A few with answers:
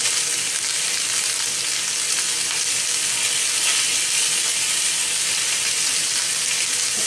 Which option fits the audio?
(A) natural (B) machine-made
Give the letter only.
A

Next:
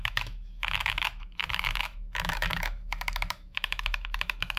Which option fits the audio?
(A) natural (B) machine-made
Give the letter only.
B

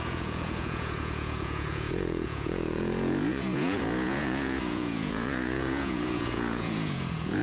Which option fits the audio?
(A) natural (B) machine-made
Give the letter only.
B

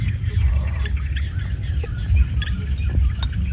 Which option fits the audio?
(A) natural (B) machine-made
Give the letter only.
A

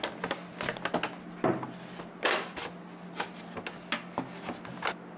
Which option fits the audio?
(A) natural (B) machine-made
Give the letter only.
A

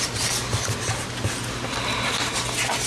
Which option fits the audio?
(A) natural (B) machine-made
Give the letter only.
A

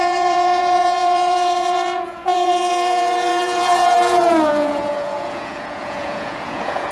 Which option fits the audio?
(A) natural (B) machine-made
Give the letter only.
B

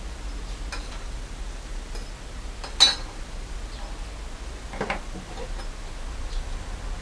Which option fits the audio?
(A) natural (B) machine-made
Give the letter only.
A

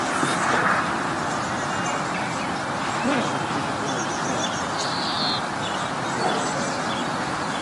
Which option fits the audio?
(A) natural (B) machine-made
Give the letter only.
A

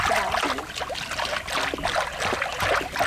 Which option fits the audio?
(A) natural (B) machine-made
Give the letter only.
A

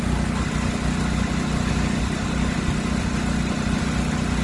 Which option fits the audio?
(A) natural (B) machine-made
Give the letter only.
A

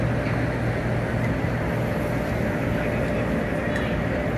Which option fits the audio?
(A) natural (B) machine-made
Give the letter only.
A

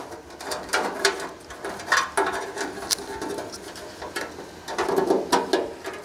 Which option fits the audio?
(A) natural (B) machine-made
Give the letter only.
A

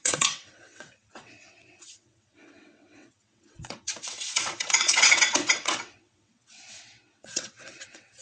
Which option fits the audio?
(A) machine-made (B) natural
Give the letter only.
A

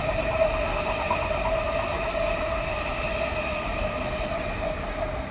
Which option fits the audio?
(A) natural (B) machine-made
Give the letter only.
A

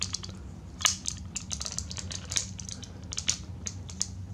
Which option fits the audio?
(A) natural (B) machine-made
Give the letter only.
A